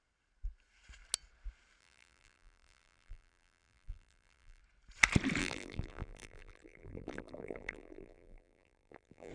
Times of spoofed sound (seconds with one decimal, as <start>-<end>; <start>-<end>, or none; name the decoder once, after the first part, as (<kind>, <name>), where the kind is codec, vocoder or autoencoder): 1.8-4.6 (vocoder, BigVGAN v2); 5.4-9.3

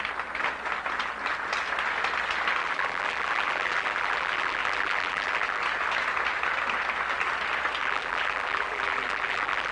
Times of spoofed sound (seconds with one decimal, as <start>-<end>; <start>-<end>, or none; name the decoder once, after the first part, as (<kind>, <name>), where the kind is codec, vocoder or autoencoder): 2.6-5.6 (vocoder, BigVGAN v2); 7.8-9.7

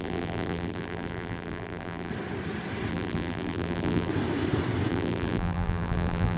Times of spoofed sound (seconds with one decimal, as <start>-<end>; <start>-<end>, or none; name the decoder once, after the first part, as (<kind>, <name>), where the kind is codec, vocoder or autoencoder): 0.0-2.1 (vocoder, BigVGAN v2); 2.9-4.1; 4.9-6.4